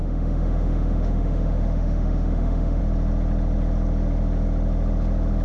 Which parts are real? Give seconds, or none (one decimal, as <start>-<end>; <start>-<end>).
2.8-5.4